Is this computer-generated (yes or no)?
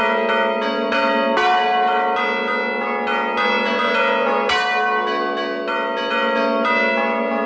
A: no